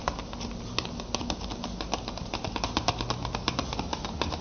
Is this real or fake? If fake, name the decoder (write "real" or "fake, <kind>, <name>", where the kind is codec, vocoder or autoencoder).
real